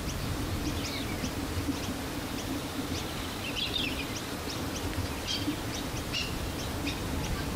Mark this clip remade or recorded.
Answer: recorded